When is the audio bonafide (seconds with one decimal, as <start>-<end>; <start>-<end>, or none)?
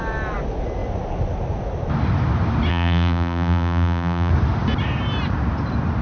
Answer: 0.0-2.7; 4.3-6.0